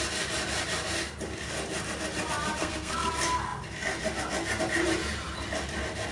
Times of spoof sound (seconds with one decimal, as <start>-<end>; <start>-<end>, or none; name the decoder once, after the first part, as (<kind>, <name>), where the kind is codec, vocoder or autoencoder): 2.6-3.1 (codec, SNAC)